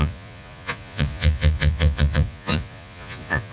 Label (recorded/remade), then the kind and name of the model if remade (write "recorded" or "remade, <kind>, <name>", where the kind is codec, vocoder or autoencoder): remade, vocoder, Vocos